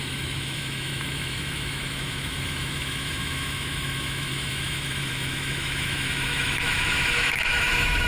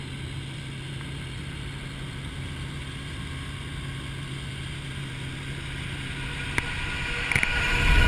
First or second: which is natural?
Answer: second